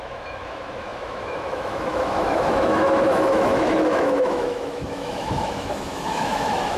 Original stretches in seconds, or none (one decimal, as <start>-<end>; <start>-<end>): none

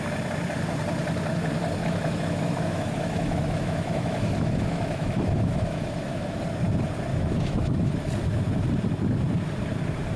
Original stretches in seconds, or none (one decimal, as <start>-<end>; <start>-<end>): 0.0-1.8; 6.4-7.1; 8.0-10.2

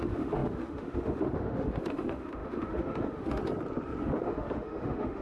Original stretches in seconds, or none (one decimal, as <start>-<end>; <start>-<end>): 3.4-4.0

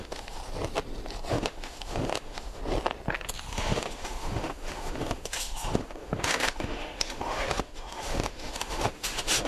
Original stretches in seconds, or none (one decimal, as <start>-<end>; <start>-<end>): 0.4-1.3; 2.6-3.5